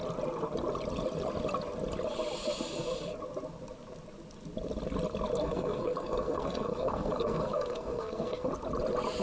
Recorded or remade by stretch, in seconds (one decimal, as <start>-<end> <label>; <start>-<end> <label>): 0.0-5.4 recorded; 5.4-8.5 remade; 8.5-9.2 recorded